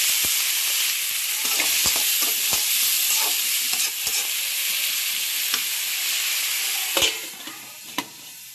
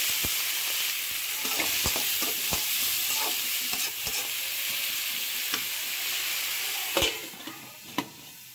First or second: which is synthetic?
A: second